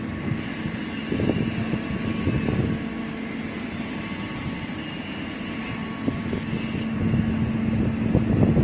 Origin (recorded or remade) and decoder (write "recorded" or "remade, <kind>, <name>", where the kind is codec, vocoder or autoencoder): recorded